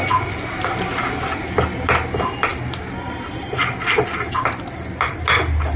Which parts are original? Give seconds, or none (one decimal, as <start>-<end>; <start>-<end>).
0.0-5.8